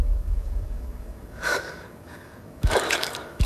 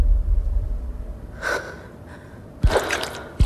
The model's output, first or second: first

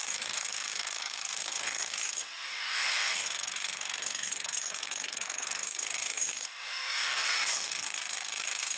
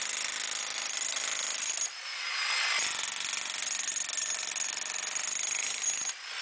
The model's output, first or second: first